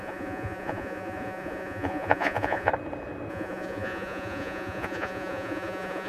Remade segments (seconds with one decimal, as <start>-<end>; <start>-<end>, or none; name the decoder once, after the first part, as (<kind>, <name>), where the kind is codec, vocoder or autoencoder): 0.0-2.7 (vocoder, Vocos); 3.3-6.1